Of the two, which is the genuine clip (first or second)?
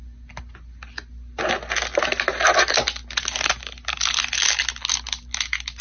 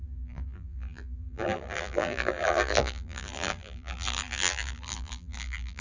first